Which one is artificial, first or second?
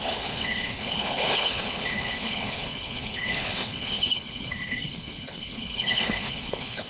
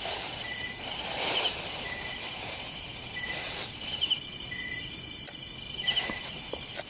first